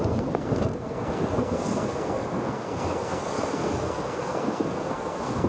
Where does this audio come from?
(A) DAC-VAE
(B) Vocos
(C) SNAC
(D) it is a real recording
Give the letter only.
C